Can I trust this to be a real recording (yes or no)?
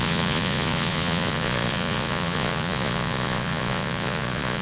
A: no